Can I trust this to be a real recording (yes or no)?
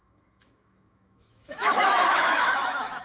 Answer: no